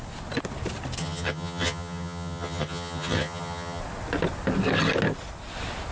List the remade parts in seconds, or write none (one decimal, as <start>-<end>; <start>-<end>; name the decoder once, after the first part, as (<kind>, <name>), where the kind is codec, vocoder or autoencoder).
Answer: 1.0-3.8 (vocoder, HiFi-GAN)